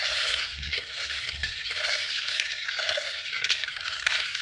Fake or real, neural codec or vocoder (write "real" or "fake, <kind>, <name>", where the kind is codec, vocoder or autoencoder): fake, codec, SNAC